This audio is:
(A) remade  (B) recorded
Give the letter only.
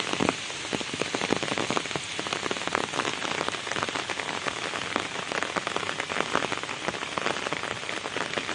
B